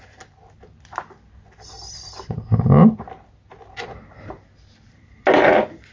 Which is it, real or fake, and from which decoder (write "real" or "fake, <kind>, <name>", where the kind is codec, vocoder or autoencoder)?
real